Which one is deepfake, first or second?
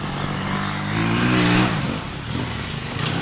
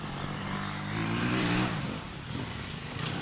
second